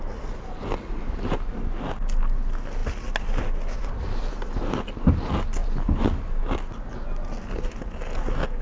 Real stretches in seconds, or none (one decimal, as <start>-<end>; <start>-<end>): 0.0-2.8; 5.1-5.6; 6.4-8.6